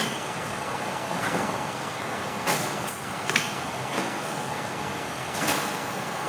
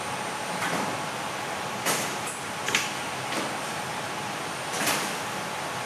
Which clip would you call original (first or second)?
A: second